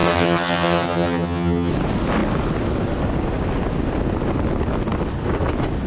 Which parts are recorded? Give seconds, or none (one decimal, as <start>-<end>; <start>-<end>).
1.7-5.9